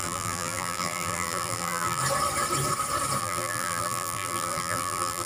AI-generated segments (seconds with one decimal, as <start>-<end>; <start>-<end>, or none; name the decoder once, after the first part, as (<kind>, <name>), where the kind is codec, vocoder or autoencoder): 0.0-2.0 (vocoder, BigVGAN v2); 3.2-5.3